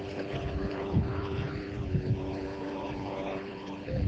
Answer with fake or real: fake